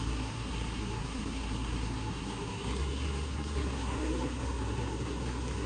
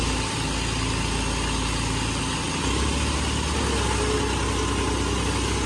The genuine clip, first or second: second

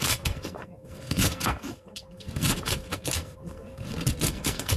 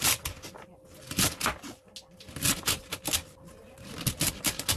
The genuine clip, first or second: second